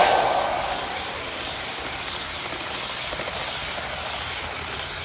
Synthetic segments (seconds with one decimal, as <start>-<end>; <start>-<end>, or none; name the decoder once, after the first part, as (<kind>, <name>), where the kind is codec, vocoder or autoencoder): none